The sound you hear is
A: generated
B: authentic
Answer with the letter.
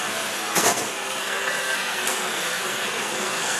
A